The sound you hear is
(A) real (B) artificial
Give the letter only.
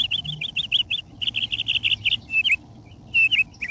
A